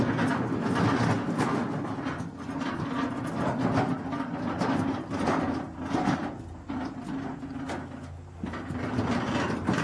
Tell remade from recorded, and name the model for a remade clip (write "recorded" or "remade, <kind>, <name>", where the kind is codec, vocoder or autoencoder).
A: recorded